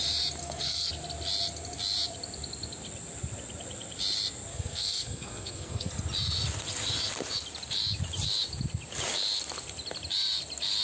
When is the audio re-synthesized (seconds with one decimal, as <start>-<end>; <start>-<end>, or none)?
0.4-0.9; 4.5-5.9

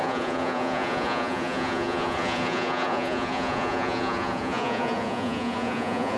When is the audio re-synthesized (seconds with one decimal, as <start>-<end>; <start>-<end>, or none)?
0.0-6.2

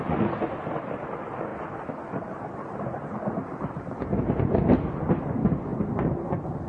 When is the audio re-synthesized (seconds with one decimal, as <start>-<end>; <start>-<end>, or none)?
none

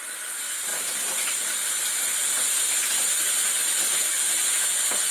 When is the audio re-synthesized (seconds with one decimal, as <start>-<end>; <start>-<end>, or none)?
0.7-3.2

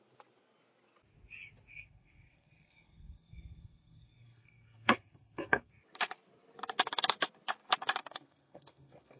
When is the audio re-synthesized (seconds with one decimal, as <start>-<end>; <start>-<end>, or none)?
1.7-5.7; 8.0-9.2

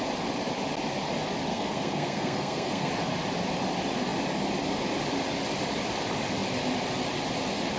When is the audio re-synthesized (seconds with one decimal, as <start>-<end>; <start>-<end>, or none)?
1.5-2.9

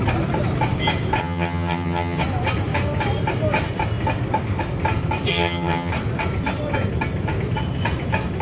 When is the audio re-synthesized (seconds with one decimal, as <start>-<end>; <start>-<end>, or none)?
1.2-2.2; 5.3-5.9